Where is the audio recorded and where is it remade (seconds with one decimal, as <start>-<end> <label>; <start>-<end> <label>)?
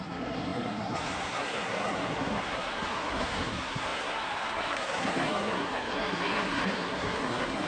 0.0-7.7 remade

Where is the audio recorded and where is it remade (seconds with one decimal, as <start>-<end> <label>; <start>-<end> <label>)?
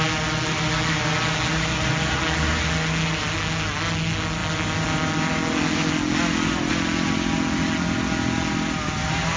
0.0-9.4 recorded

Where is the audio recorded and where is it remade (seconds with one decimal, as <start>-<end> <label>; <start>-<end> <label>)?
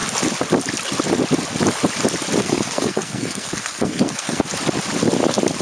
0.0-2.4 recorded; 2.4-4.4 remade; 4.4-5.6 recorded